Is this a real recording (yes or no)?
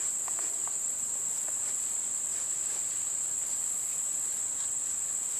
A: no